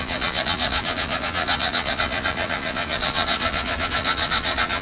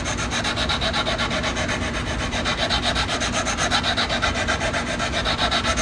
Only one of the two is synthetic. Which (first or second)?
first